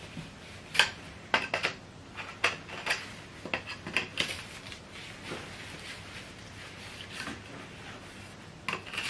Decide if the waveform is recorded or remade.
recorded